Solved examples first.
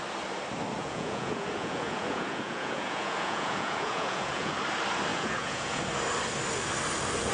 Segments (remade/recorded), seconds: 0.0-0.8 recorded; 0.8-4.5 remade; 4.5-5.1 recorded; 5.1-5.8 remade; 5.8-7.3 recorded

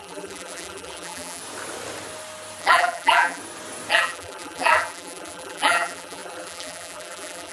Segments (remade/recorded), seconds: 0.0-1.4 remade; 1.4-2.6 recorded; 2.6-3.4 remade; 3.4-3.9 recorded; 3.9-7.5 remade

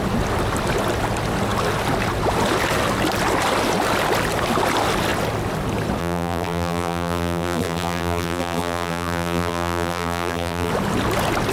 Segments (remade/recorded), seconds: 0.0-6.0 recorded; 6.0-10.7 remade; 10.7-11.5 recorded

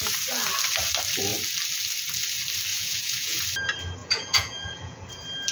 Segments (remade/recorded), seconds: 0.0-2.7 recorded; 2.7-3.4 remade; 3.4-4.0 recorded; 4.0-5.0 remade; 5.0-5.5 recorded